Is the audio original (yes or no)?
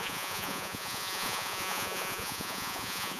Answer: no